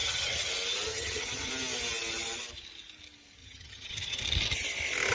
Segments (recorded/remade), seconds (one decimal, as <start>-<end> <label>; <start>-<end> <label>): 0.0-0.5 remade; 0.5-0.9 recorded; 0.9-1.5 remade; 1.5-3.4 recorded; 3.4-4.2 remade; 4.2-5.1 recorded